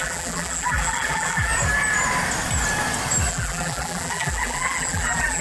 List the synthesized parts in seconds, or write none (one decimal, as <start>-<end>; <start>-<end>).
0.0-1.5; 3.3-5.4